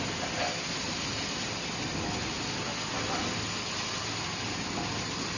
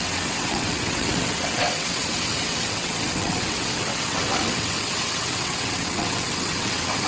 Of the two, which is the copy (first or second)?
second